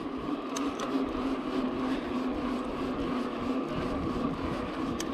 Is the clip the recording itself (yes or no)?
no